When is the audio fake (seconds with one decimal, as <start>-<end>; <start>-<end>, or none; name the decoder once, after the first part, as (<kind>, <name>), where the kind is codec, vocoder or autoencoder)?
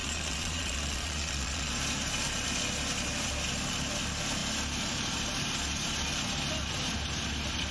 0.0-1.7 (vocoder, Vocos)